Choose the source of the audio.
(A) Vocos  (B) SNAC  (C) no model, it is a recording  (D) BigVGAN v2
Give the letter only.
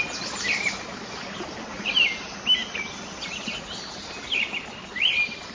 C